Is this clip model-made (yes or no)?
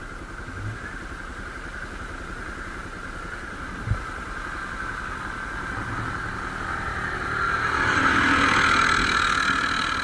no